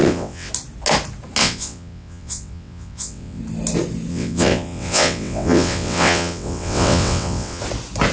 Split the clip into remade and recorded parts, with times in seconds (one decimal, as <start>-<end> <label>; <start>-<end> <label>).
0.0-0.5 remade; 0.5-1.4 recorded; 1.4-3.4 remade; 3.4-4.1 recorded; 4.1-7.6 remade; 7.6-8.1 recorded